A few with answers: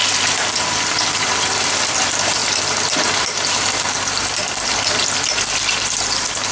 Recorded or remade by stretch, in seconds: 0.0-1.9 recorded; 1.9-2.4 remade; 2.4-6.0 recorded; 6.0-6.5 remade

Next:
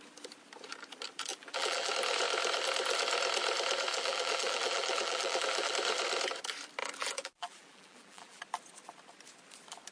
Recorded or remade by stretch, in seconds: 0.0-1.3 recorded; 1.3-1.9 remade; 1.9-3.9 recorded; 3.9-5.7 remade; 5.7-6.8 recorded; 6.8-8.4 remade; 8.4-9.9 recorded

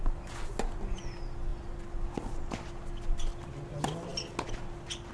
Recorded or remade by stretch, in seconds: 0.0-5.1 recorded

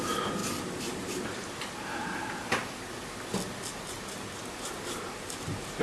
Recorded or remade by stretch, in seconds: 0.0-2.6 remade; 2.6-3.9 recorded; 3.9-5.8 remade

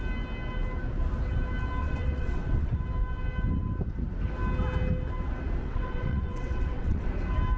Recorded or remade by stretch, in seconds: 0.0-1.8 recorded; 1.8-2.7 remade; 2.7-5.6 recorded; 5.6-7.1 remade; 7.1-7.6 recorded

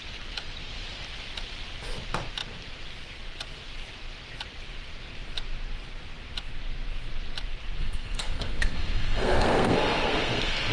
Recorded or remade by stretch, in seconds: 0.0-7.8 recorded; 7.8-10.7 remade

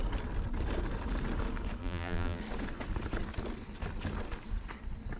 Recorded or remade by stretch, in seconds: 0.0-1.8 recorded; 1.8-2.4 remade; 2.4-5.2 recorded

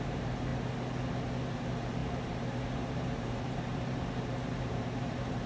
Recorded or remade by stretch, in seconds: 0.0-0.5 remade; 0.5-1.5 recorded; 1.5-5.5 remade